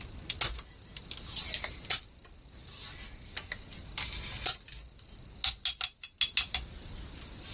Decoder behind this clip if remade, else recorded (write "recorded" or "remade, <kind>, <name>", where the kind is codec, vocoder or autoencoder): recorded